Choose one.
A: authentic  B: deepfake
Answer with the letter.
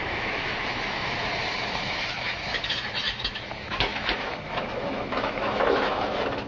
B